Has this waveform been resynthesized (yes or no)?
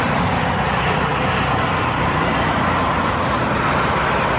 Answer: no